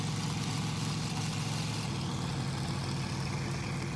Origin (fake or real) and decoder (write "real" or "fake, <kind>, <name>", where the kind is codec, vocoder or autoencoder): real